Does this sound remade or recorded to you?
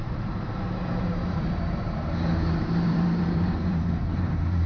remade